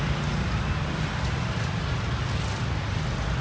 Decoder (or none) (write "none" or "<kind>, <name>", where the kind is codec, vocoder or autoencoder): none